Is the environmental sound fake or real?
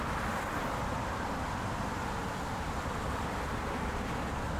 real